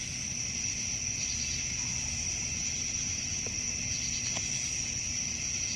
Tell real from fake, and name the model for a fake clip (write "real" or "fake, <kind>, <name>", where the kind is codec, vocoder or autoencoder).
real